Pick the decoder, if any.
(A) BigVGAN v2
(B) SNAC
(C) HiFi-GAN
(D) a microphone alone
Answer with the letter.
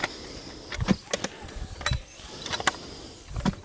D